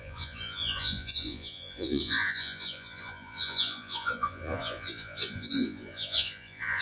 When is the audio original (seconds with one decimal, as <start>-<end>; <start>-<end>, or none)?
none